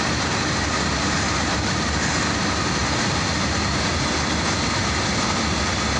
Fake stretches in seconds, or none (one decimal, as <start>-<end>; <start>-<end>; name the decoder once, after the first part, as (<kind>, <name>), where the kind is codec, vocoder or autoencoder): none

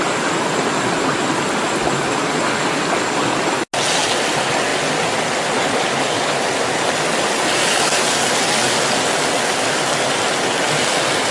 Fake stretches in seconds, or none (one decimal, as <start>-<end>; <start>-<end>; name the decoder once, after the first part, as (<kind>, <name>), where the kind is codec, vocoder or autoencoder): none

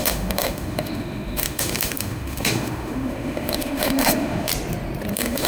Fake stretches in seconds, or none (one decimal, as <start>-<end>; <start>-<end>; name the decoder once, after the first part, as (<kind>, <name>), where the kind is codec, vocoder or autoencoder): 0.0-4.5 (autoencoder, DAC-VAE); 5.1-5.5

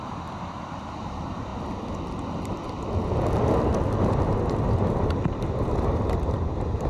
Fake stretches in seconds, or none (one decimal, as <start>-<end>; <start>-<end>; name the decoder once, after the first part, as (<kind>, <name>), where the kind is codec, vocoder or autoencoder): 0.0-1.5 (vocoder, BigVGAN v2); 4.5-6.9

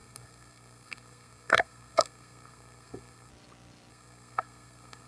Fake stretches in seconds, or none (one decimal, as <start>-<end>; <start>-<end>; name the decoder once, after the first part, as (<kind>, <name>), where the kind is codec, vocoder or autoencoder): 0.0-3.3 (codec, SNAC); 3.9-5.1

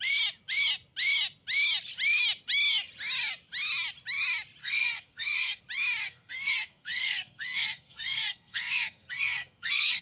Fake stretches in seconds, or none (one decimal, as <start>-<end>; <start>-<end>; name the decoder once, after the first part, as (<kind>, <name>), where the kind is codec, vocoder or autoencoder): 4.6-5.6 (codec, SNAC); 6.0-10.0

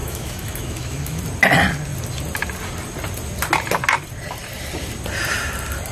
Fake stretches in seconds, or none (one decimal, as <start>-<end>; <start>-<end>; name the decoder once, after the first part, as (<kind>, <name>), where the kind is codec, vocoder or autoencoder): 0.0-1.2 (autoencoder, DAC-VAE)

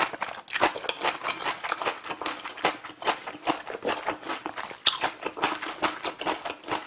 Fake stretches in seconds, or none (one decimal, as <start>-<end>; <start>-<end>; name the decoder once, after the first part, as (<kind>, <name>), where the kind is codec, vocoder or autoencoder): none